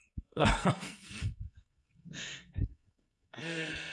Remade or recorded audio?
remade